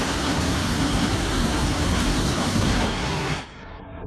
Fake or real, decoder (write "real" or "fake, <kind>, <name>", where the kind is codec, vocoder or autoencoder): fake, codec, SNAC